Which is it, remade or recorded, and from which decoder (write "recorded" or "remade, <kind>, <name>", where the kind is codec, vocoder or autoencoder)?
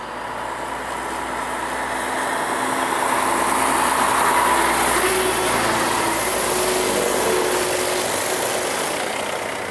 recorded